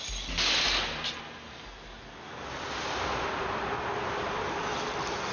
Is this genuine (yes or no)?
yes